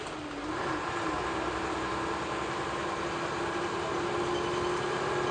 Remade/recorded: recorded